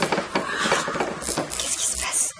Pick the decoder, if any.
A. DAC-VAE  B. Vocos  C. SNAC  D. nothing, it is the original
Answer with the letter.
D